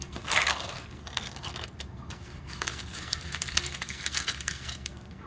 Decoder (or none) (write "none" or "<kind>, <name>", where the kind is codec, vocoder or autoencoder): codec, SNAC